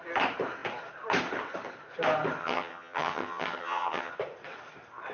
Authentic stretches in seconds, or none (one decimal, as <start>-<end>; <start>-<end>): 0.0-2.4; 4.1-5.1